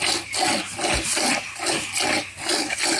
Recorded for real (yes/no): yes